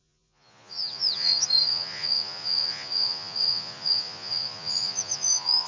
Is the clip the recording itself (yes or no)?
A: no